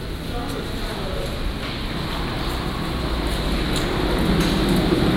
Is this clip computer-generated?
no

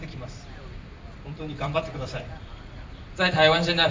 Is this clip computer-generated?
yes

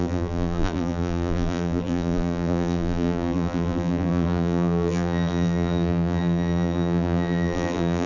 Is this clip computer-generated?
yes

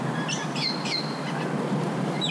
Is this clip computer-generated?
no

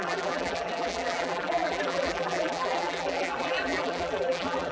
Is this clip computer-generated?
yes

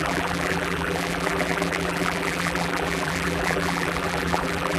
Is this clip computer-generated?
yes